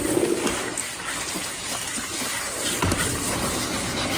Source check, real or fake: real